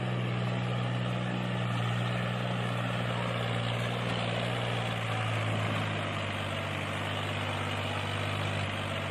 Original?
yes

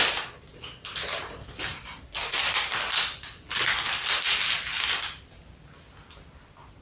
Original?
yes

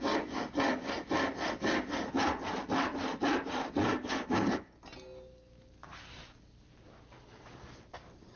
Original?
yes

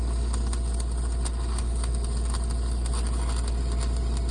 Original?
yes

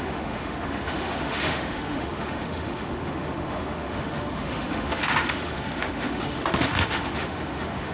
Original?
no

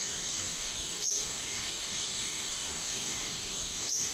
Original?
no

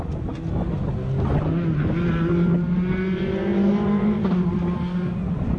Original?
yes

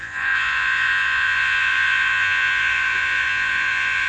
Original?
no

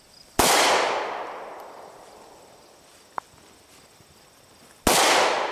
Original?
yes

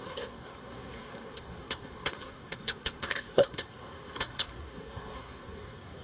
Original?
no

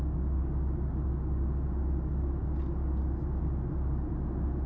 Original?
yes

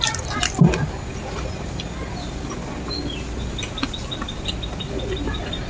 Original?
yes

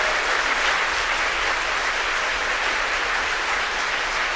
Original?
yes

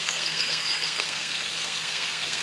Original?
no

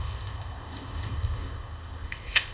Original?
no